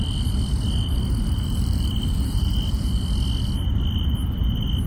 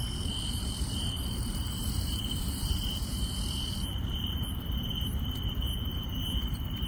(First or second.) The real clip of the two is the first